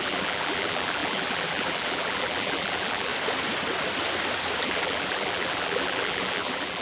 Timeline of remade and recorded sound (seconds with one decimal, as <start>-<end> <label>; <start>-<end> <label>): 0.0-3.1 remade; 3.1-4.6 recorded; 4.6-6.8 remade